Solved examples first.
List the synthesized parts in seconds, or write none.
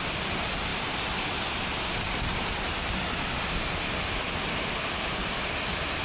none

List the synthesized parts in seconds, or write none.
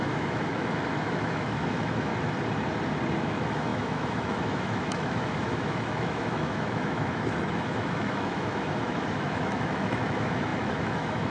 0.0-2.1 (autoencoder, DAC-VAE); 3.2-11.3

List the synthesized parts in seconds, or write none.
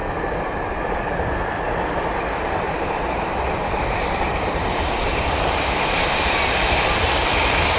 0.0-7.8 (vocoder, BigVGAN v2)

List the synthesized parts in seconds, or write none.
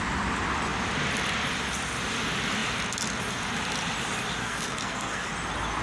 4.4-5.3 (codec, SNAC)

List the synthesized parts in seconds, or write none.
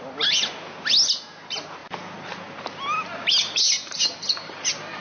none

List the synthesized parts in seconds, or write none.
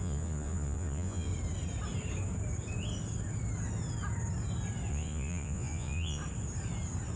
0.0-1.3 (vocoder, Vocos); 4.9-6.2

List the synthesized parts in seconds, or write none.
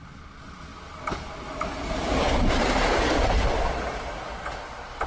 none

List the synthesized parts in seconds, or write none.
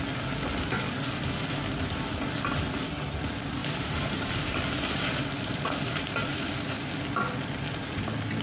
3.6-4.3 (vocoder, BigVGAN v2); 6.3-6.9